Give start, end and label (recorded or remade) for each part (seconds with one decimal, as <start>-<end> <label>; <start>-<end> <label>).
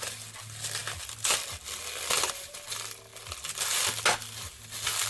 0.0-5.1 recorded